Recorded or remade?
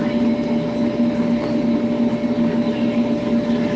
recorded